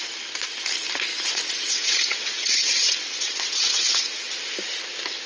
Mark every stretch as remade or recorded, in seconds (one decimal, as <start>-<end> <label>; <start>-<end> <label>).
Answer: 0.0-1.1 recorded; 1.1-4.3 remade; 4.3-5.3 recorded